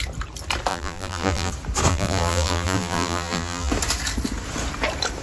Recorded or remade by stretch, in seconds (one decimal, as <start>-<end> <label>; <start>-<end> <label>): 0.0-0.7 recorded; 0.7-1.5 remade; 1.5-1.9 recorded; 1.9-3.7 remade; 3.7-5.2 recorded